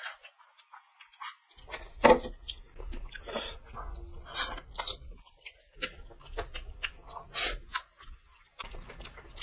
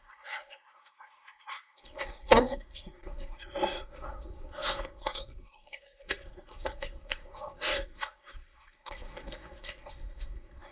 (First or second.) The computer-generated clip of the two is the second